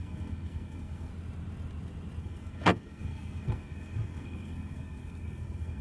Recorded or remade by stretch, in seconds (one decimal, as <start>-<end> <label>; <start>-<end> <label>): 0.0-1.1 remade; 1.1-2.2 recorded; 2.2-5.8 remade